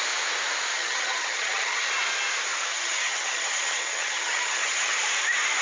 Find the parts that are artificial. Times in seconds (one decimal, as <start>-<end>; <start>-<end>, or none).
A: 0.7-1.9; 2.7-5.0